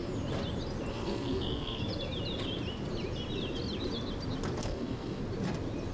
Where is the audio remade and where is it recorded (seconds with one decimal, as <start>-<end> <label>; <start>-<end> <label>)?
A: 0.0-0.9 recorded; 0.9-1.8 remade; 1.8-4.6 recorded; 4.6-5.2 remade; 5.2-5.9 recorded